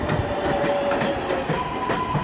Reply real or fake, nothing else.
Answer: real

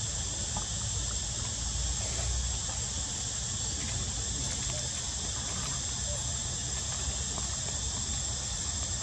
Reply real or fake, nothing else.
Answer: real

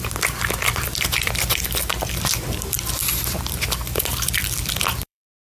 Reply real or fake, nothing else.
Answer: fake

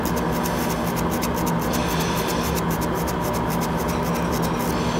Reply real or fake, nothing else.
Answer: real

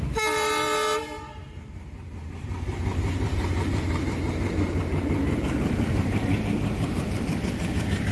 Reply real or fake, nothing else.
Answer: fake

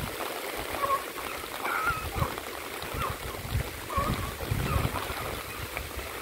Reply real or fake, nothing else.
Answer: real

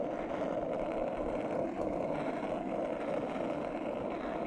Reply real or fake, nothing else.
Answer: real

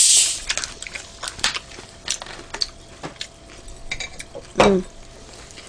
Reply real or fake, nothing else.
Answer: real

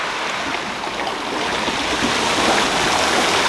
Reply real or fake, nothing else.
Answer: real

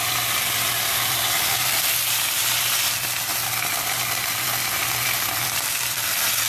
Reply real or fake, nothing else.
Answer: fake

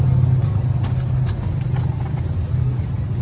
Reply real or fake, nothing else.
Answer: real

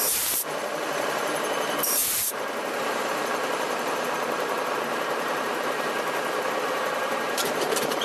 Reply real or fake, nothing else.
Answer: fake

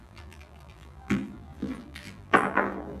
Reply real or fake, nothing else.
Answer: fake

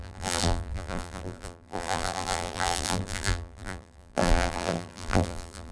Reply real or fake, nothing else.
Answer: fake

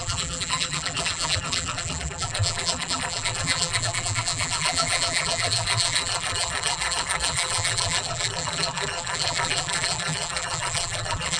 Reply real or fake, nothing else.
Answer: fake